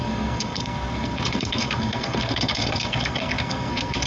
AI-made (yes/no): yes